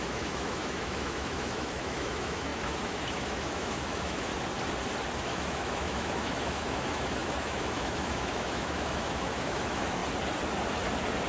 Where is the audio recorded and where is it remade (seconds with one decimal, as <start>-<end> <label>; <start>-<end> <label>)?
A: 0.0-4.3 remade; 4.3-5.2 recorded; 5.2-10.0 remade; 10.0-11.3 recorded